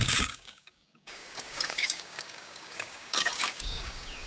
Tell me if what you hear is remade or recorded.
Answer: remade